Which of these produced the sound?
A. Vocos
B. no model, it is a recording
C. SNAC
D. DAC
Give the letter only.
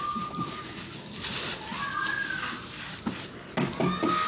B